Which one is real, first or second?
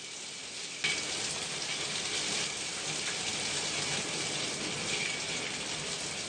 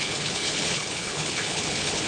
first